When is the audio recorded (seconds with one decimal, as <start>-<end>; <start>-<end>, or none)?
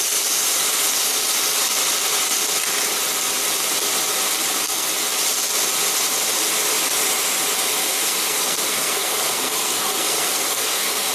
0.0-4.4; 4.9-7.8